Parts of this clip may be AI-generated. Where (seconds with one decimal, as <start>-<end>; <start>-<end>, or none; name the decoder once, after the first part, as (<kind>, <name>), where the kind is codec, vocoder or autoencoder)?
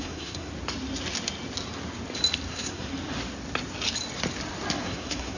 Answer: 0.0-0.5 (codec, SNAC); 2.5-2.9; 4.8-5.4